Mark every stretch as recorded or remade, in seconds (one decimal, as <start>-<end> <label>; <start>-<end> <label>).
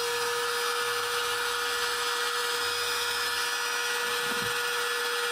0.0-5.3 recorded